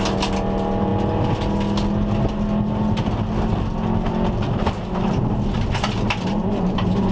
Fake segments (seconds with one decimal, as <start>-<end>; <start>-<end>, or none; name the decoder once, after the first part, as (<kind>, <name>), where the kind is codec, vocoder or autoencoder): none